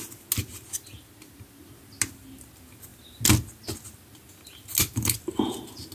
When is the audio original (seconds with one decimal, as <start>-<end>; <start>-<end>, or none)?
0.0-5.9